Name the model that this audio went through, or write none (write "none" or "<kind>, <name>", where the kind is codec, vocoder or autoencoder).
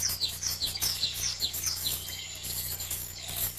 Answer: codec, DAC